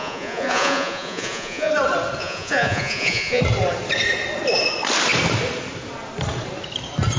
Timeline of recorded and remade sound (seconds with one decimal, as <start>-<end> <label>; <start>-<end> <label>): 0.0-1.7 remade; 1.7-2.2 recorded; 2.2-3.4 remade; 3.4-7.2 recorded